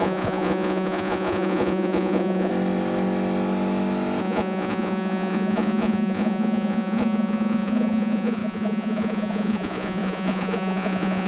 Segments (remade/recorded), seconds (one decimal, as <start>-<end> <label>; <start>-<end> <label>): 0.0-2.5 remade; 2.5-4.2 recorded; 4.2-11.3 remade